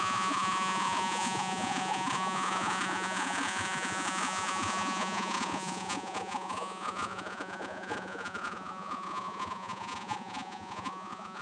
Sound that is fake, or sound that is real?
fake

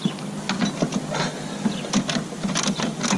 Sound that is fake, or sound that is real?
real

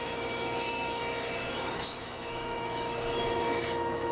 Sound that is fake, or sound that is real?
fake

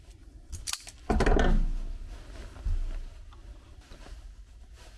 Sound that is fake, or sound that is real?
real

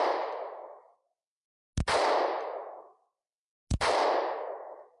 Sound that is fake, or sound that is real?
real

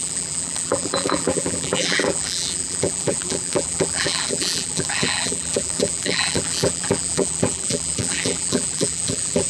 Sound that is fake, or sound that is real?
fake